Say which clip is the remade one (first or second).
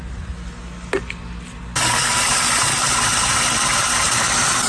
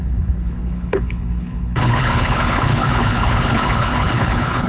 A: second